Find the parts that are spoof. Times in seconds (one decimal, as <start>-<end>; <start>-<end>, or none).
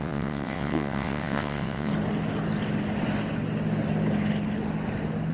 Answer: 0.0-1.9